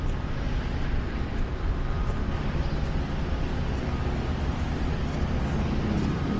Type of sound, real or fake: real